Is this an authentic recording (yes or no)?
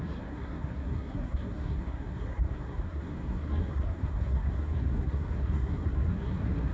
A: no